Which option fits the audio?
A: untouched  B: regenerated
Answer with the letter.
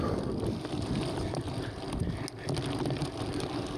A